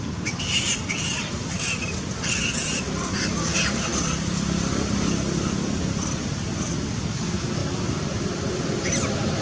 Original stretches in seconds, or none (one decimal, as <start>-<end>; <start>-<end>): 0.0-3.5; 7.0-7.6; 8.4-9.4